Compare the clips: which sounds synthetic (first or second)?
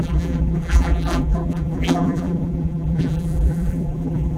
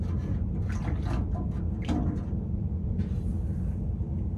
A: first